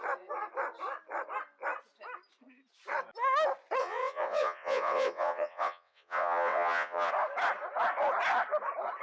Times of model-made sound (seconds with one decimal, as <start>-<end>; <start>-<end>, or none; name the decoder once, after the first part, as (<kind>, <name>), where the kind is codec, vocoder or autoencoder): 3.8-7.1 (vocoder, WaveNeXt)